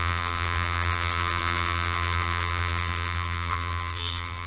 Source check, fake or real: fake